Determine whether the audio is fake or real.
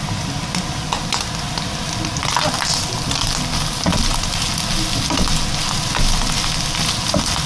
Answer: real